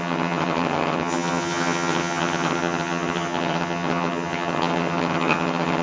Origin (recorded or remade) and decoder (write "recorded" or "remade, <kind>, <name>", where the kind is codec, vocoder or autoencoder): remade, vocoder, HiFi-GAN